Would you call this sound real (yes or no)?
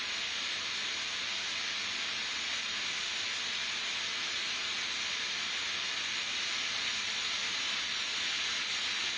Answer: yes